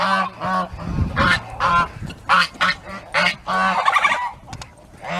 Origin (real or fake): real